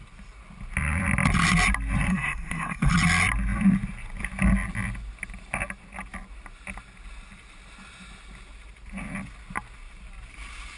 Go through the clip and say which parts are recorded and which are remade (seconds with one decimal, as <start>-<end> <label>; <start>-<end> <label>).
0.0-2.1 recorded; 2.1-2.9 remade; 2.9-10.8 recorded